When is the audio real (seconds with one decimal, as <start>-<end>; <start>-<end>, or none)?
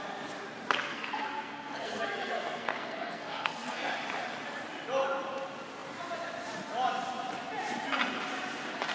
0.0-0.9; 3.9-8.9